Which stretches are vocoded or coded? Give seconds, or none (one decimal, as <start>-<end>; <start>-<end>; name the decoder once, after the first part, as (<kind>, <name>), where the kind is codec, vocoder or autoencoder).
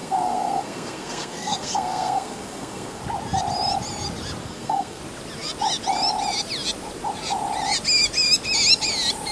0.0-3.0 (codec, SNAC); 4.4-5.0